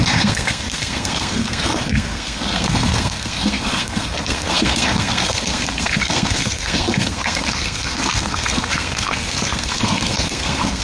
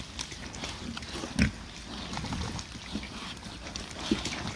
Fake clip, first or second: first